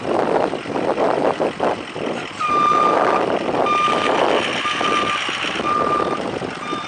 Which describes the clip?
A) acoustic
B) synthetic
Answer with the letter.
B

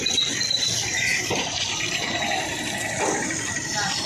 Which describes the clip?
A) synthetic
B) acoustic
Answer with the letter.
B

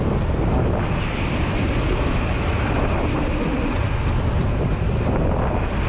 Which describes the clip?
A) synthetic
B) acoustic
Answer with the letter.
B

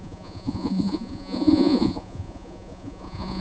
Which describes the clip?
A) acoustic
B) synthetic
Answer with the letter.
B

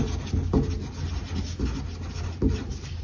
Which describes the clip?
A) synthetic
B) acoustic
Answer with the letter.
B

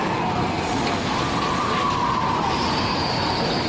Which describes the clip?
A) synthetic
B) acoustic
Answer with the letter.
B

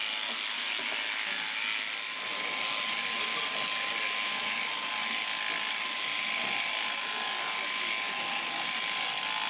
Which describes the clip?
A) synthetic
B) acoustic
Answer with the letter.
B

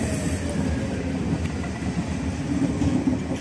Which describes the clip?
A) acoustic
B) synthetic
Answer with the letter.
A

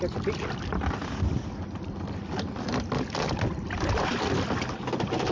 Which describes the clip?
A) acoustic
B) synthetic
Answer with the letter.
A